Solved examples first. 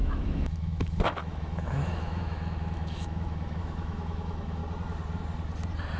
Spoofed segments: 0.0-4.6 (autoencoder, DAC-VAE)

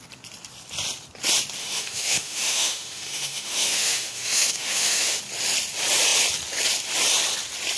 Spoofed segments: 1.6-5.2 (autoencoder, DAC-VAE)

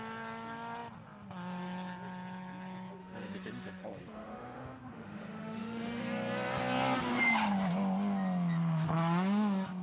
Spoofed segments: 3.0-6.0 (autoencoder, DAC-VAE)

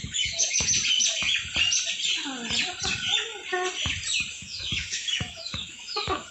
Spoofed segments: 0.0-0.7 (autoencoder, DAC-VAE); 4.3-6.3

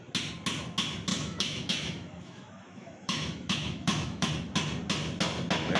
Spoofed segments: 1.1-4.3 (autoencoder, DAC-VAE)

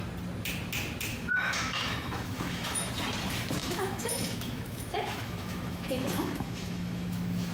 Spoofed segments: 1.1-2.9 (autoencoder, DAC-VAE); 3.6-7.5